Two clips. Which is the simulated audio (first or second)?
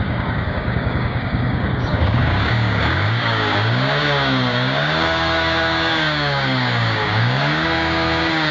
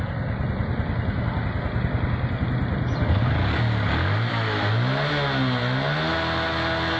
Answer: first